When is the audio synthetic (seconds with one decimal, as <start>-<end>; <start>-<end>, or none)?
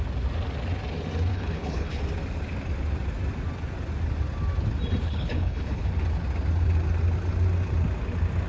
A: 1.3-2.0; 5.0-5.9